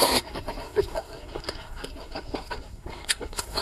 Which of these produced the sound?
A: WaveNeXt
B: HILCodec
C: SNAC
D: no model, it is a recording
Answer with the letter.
C